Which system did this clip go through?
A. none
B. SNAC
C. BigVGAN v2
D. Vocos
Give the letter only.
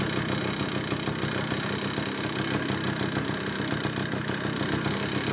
A